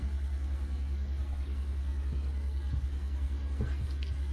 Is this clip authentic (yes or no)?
no